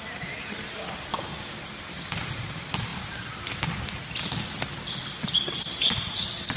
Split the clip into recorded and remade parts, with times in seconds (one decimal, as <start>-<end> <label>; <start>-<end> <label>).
0.0-1.1 recorded; 1.1-1.6 remade; 1.6-6.6 recorded